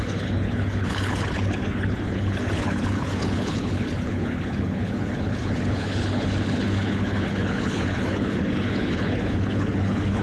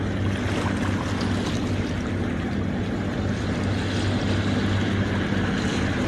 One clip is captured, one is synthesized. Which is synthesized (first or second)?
first